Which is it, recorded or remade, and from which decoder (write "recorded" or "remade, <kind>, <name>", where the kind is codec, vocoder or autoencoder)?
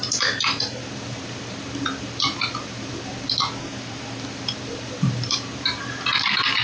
remade, vocoder, BigVGAN v2